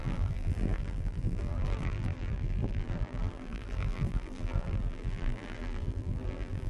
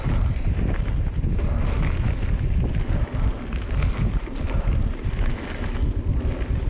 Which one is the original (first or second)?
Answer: second